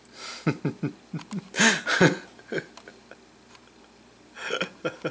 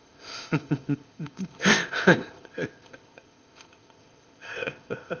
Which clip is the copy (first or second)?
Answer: second